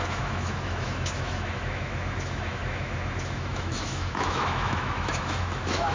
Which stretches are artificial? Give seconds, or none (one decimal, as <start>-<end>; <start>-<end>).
0.0-5.9